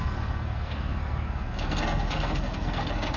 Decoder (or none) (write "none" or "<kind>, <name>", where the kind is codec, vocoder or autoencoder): codec, SNAC